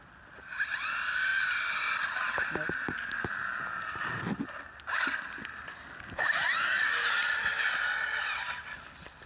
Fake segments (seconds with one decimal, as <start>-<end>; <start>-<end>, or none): none